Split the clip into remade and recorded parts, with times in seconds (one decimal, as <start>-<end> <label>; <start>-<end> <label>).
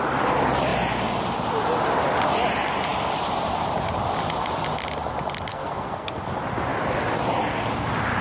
0.0-5.5 recorded; 5.5-6.2 remade; 6.2-8.2 recorded